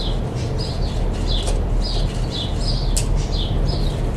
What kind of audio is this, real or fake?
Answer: real